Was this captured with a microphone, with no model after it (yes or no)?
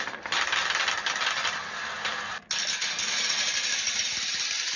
yes